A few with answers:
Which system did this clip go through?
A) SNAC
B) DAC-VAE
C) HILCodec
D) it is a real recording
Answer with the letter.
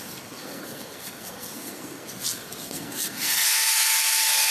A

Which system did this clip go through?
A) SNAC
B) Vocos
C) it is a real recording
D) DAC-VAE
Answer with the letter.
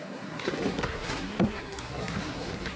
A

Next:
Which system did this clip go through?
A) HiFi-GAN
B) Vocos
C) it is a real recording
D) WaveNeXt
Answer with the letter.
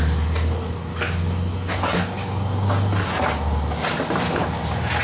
C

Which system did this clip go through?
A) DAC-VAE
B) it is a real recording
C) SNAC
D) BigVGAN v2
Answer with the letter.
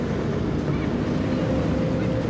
B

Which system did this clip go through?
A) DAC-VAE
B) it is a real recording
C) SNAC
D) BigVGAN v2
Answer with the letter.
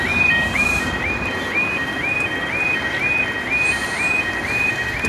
B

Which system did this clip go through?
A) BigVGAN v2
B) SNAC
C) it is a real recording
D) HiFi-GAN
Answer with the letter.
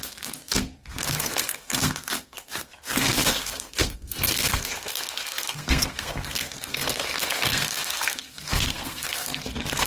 B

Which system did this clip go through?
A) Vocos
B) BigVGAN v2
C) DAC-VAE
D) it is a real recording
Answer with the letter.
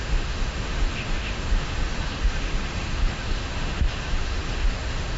C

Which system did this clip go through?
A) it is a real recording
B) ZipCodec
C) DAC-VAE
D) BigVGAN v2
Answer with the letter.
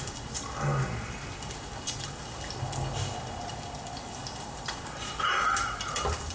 A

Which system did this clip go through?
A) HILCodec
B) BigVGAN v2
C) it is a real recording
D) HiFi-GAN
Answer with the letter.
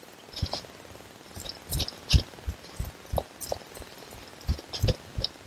C